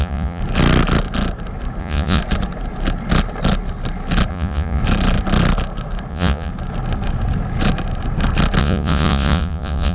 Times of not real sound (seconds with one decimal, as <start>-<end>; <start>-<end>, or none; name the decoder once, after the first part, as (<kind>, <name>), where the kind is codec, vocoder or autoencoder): 0.0-0.4 (vocoder, Vocos); 1.8-2.2; 4.3-4.8; 6.1-6.5; 8.6-9.9